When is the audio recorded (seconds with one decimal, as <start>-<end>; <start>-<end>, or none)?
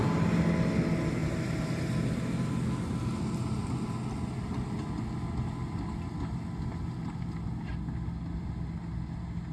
0.0-9.5